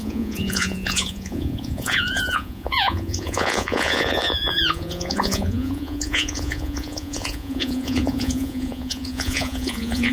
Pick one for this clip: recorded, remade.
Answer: remade